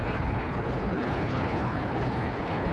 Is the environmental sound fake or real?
fake